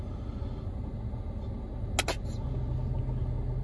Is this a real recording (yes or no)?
yes